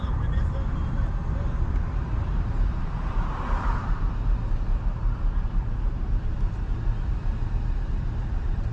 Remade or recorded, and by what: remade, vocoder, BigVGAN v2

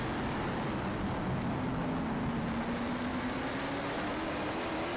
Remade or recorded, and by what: recorded